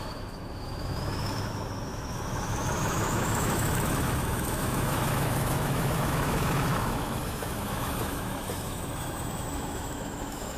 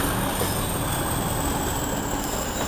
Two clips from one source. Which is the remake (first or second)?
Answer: first